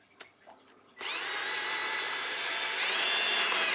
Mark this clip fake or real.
real